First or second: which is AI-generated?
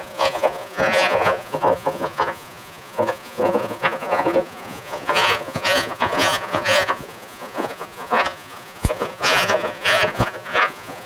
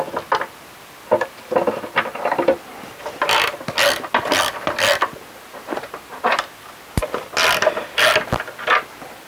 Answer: first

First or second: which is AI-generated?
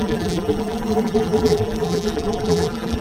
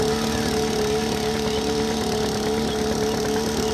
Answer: first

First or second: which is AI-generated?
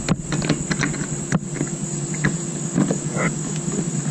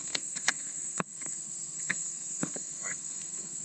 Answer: second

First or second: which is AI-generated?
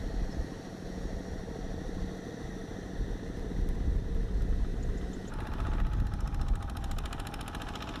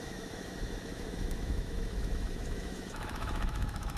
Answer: second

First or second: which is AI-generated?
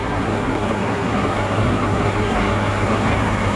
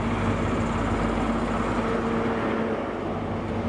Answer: first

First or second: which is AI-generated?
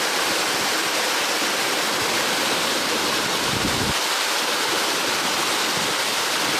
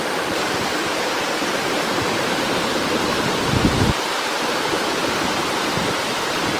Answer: second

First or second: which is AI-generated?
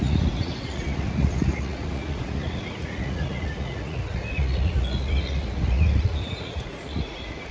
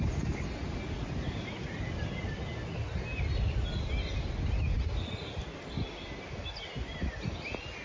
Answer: first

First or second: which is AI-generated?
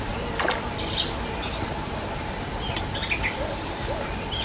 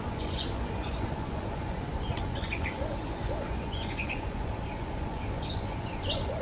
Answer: second